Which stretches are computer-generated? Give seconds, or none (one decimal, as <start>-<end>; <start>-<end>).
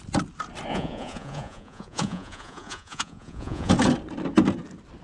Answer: 0.7-3.7